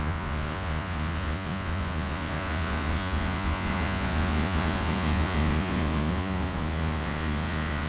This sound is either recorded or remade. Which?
remade